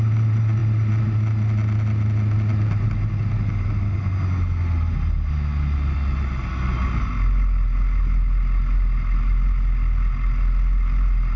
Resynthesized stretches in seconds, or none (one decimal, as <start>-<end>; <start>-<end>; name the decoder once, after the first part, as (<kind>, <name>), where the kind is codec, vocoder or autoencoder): none

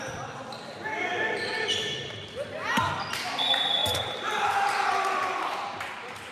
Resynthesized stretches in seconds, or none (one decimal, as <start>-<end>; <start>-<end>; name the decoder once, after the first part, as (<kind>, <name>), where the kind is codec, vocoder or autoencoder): 3.8-6.3 (vocoder, BigVGAN v2)

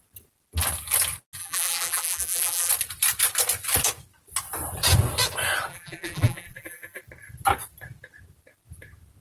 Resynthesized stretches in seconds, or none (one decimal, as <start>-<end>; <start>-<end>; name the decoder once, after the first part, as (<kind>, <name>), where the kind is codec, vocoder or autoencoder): 1.4-2.7 (vocoder, BigVGAN v2); 5.7-7.0